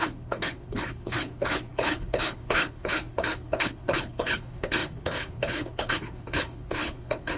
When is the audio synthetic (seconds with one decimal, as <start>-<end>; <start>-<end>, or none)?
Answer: 0.0-7.4